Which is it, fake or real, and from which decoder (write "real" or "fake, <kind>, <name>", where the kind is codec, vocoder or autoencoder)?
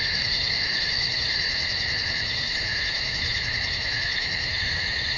fake, autoencoder, DAC-VAE